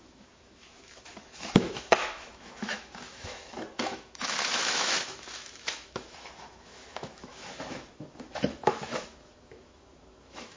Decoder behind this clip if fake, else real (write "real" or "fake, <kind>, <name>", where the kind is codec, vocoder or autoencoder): fake, autoencoder, DAC-VAE